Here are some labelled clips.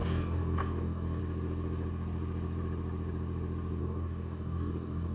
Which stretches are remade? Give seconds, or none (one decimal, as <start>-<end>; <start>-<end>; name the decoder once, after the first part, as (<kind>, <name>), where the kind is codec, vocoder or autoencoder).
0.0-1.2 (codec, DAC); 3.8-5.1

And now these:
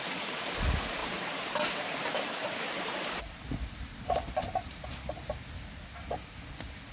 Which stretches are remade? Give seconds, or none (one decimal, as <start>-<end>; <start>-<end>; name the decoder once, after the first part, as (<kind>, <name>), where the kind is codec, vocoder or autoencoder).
none

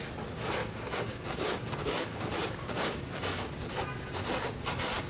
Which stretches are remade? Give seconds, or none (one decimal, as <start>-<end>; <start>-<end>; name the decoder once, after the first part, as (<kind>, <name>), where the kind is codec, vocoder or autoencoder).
0.6-3.7 (codec, DAC)